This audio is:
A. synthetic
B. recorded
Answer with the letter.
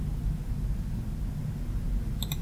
B